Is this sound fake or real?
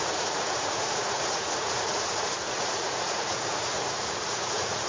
fake